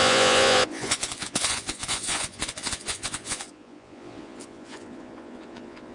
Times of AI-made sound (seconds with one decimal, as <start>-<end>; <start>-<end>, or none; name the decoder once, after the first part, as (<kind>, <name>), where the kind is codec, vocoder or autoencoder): 0.0-5.9 (vocoder, Vocos)

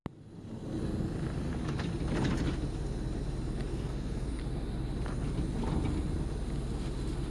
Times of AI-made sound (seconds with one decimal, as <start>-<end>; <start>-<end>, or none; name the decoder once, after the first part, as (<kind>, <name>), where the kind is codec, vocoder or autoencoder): 3.7-4.4 (codec, SNAC)

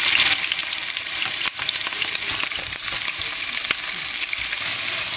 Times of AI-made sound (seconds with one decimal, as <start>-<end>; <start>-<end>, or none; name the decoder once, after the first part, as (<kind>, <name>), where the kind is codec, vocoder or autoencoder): 0.6-2.8 (vocoder, BigVGAN v2)

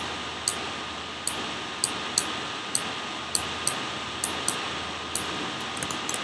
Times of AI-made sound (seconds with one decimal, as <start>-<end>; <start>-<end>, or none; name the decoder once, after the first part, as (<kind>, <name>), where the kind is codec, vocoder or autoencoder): none

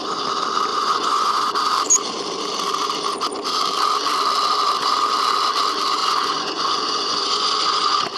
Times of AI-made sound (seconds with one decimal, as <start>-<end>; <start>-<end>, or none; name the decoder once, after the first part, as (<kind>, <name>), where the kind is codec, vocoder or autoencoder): 0.7-1.5 (vocoder, Vocos); 6.0-8.2